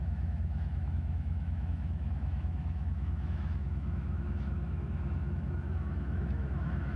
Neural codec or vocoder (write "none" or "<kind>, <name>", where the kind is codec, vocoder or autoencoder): autoencoder, DAC-VAE